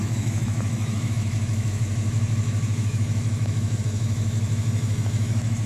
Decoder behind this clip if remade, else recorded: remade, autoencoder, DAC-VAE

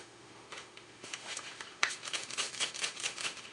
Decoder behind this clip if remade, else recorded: remade, autoencoder, DAC-VAE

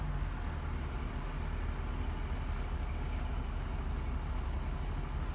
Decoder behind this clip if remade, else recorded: recorded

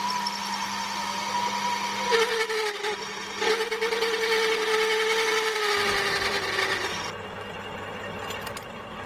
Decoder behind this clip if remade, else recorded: recorded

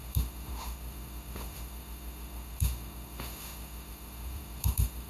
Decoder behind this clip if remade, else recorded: remade, autoencoder, DAC-VAE